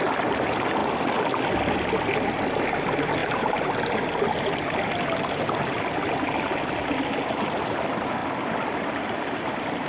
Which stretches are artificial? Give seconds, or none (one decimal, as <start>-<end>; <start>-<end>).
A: none

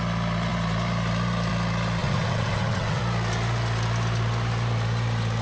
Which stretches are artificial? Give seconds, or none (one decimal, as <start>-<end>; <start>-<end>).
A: 2.0-3.0

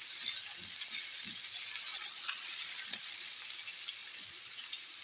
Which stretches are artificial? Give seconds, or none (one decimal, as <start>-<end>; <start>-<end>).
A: 1.9-3.4; 4.0-5.0